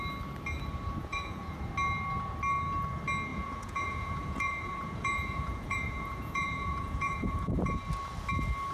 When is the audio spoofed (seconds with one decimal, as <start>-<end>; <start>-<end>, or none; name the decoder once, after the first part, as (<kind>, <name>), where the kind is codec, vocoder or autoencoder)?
1.0-1.7 (vocoder, Vocos); 3.3-7.7